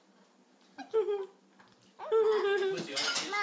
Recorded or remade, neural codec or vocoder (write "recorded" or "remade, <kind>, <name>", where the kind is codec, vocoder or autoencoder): recorded